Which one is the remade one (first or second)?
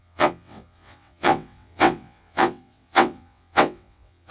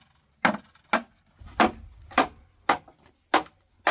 first